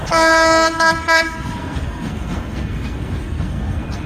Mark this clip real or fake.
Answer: fake